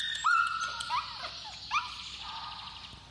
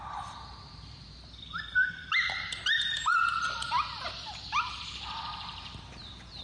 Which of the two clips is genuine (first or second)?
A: first